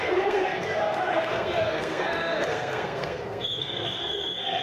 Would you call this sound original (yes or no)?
no